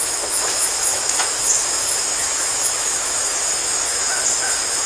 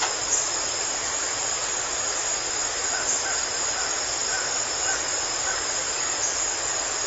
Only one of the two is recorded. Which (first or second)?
second